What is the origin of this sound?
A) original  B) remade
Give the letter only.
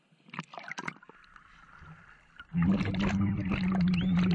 A